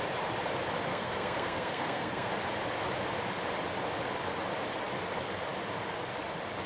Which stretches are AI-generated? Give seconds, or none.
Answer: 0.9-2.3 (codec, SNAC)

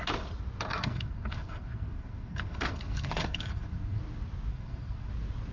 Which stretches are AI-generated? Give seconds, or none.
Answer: 0.7-4.0 (codec, SNAC); 4.5-5.1

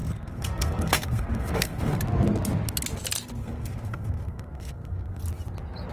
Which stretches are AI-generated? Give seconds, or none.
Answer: 0.0-2.0 (codec, SNAC); 3.4-5.2

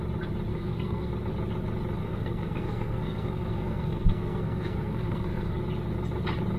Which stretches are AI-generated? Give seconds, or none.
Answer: 0.5-1.1 (codec, SNAC); 2.0-5.6